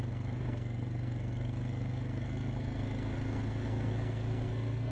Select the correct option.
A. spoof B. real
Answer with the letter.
A